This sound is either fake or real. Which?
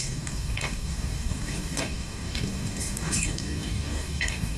fake